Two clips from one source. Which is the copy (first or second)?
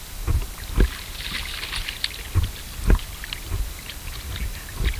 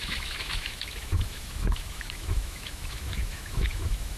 second